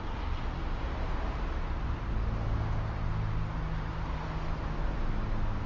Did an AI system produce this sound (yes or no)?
no